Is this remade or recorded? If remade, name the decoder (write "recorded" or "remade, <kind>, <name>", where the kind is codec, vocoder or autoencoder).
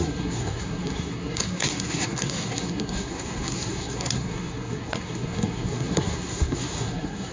remade, codec, SNAC